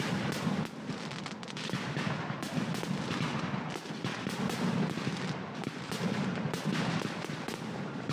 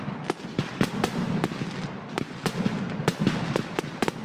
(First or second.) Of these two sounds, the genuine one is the second